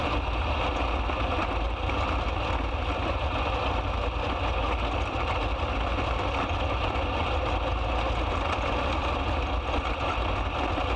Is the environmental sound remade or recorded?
recorded